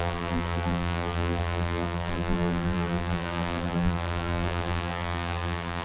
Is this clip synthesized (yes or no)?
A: yes